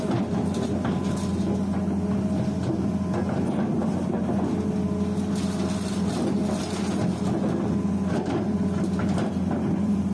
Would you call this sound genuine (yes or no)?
yes